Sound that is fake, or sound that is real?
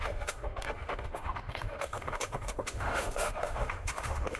fake